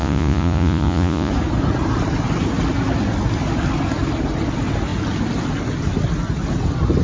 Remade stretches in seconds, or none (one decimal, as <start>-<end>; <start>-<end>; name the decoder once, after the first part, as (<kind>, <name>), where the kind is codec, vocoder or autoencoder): 0.0-1.3 (vocoder, Vocos)